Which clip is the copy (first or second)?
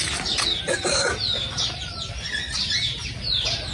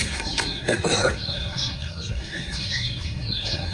second